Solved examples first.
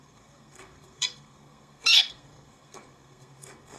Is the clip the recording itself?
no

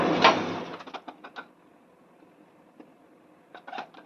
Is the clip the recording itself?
yes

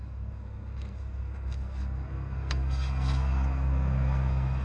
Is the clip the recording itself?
no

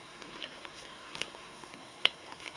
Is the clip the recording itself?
no